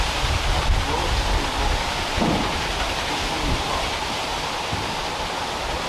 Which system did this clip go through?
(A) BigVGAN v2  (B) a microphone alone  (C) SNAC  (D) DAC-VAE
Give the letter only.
B